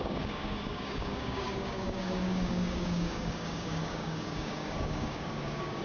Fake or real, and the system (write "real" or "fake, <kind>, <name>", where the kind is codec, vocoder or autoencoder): fake, codec, DAC